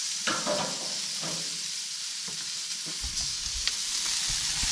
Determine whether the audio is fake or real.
real